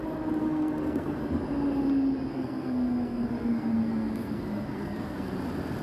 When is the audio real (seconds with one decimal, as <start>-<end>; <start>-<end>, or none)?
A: 0.0-0.4; 1.2-2.3; 5.3-5.8

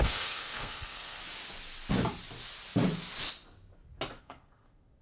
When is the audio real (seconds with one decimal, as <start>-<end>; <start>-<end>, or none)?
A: 1.2-4.2

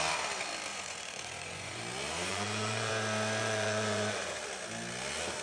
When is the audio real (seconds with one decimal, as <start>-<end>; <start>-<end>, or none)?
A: 0.0-0.7; 1.8-2.3; 2.9-3.4; 4.4-5.4

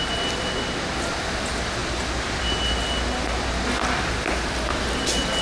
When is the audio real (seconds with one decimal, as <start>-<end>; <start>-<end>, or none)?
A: 0.0-1.8; 5.0-5.4

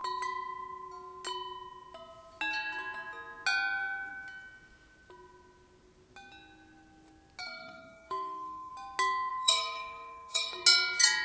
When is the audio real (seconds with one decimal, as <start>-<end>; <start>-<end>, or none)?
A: 0.0-7.4; 8.7-9.3; 10.6-11.2

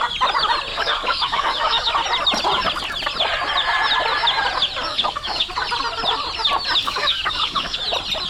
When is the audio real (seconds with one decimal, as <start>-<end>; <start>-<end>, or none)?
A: 0.0-0.7; 1.9-4.9; 5.5-6.8; 7.8-8.3